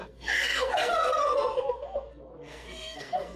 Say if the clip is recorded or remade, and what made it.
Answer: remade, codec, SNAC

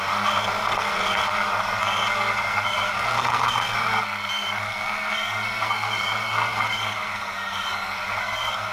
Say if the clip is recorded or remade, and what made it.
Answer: remade, codec, SNAC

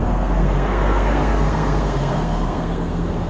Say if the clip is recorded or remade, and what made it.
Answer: remade, codec, SNAC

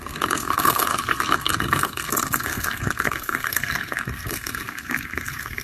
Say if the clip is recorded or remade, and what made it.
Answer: remade, codec, SNAC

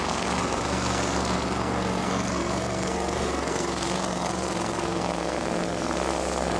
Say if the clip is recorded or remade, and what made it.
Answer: remade, codec, SNAC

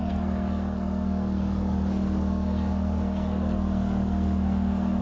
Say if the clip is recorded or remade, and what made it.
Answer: remade, codec, SNAC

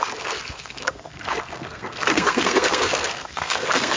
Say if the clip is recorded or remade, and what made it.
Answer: remade, codec, SNAC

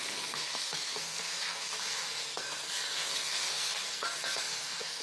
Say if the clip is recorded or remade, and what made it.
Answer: remade, codec, SNAC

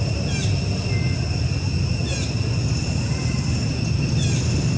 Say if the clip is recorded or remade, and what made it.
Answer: recorded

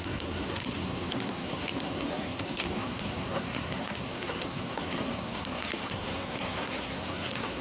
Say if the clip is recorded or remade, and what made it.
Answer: remade, codec, SNAC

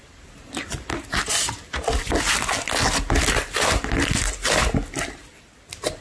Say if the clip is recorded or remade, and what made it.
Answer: recorded